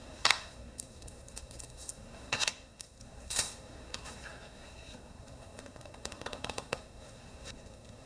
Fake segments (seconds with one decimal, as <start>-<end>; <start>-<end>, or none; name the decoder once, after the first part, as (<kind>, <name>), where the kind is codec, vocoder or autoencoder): 0.0-8.1 (codec, SNAC)